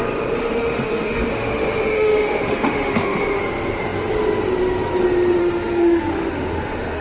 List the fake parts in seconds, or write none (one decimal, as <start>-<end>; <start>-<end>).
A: 0.4-3.4; 5.4-7.0